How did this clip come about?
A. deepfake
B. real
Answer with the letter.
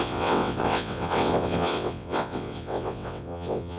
A